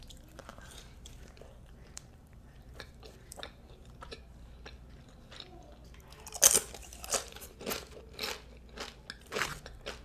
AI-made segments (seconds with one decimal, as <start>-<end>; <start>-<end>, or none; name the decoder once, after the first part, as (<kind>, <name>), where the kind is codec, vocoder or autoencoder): 0.5-4.2 (vocoder, BigVGAN v2); 6.8-8.0